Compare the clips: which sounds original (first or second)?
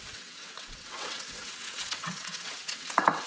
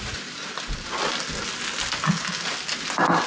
second